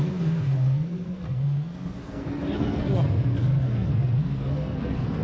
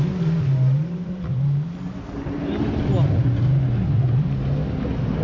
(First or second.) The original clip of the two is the second